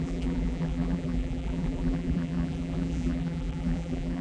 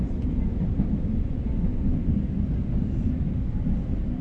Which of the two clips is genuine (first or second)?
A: second